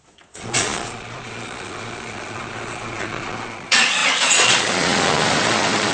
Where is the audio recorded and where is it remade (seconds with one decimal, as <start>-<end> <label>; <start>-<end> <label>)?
0.0-5.9 remade